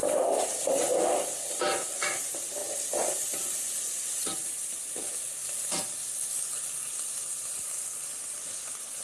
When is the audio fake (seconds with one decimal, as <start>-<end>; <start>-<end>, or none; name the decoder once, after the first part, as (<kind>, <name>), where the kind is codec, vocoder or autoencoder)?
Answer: 0.0-0.7 (vocoder, BigVGAN v2); 2.6-5.2

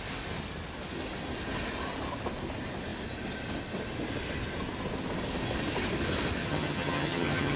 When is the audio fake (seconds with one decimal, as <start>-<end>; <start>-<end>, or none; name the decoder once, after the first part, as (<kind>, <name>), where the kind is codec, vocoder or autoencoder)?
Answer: 6.4-7.6 (vocoder, HiFi-GAN)

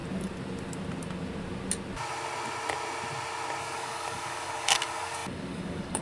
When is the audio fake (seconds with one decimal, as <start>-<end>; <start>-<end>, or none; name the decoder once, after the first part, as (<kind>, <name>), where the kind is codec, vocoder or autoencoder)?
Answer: 3.6-6.0 (codec, DAC)

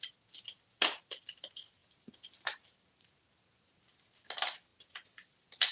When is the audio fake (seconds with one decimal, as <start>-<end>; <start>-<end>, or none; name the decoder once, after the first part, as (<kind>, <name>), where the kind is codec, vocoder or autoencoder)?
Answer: 4.7-5.3 (vocoder, BigVGAN v2)